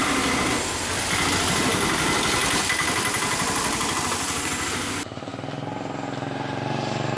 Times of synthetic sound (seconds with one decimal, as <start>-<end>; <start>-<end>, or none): none